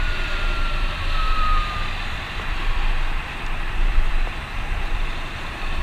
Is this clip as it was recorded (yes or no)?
no